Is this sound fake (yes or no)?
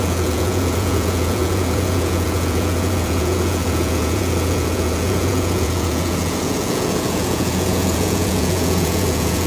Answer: yes